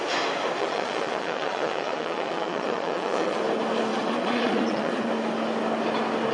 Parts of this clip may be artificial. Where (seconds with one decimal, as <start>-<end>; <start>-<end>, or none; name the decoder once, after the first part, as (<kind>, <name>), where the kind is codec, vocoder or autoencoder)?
0.6-3.4 (vocoder, Vocos); 3.9-5.1